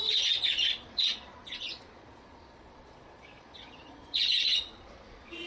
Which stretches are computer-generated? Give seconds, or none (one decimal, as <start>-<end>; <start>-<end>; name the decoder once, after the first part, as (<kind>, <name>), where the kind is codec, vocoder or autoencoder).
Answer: 0.0-5.5 (vocoder, Vocos)